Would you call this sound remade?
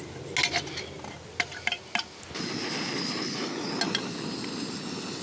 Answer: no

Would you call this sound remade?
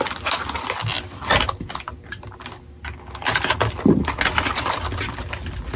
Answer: no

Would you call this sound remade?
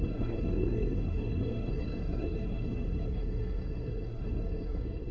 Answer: yes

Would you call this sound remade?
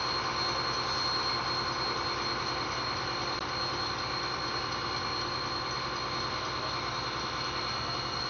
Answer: no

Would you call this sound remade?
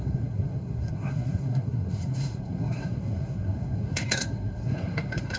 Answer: yes